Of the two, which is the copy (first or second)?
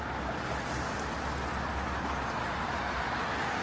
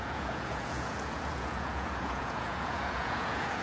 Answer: second